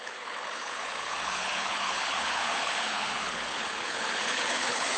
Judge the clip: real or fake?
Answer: fake